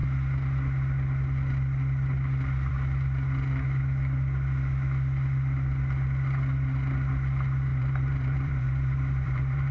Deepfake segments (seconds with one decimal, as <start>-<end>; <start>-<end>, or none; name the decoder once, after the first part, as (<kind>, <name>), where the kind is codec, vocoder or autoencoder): 7.7-9.7 (vocoder, BigVGAN v2)